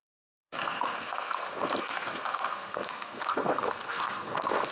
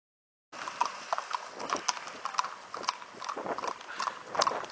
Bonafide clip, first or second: second